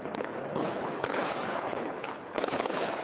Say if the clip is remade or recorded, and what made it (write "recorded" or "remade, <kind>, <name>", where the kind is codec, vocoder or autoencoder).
remade, codec, HILCodec